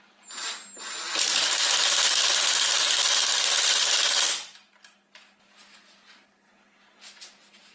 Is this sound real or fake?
real